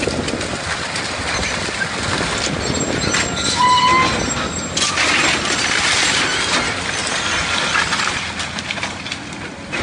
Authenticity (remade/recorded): recorded